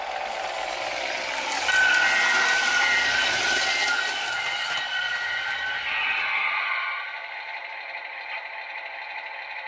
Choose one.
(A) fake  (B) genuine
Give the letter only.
B